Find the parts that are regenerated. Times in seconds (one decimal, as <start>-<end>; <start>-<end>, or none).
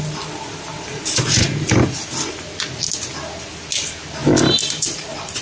0.7-1.7; 4.2-5.4